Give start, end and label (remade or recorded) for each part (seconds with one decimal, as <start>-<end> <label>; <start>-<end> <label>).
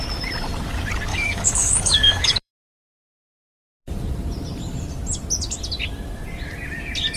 0.0-1.1 recorded; 1.1-2.5 remade; 2.5-7.2 recorded